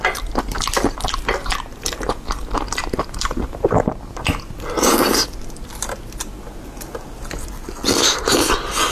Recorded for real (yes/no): yes